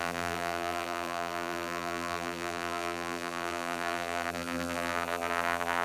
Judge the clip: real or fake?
fake